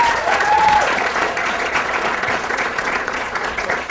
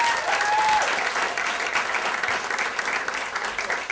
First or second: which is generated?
first